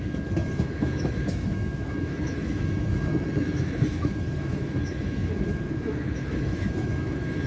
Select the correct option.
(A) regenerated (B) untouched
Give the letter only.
A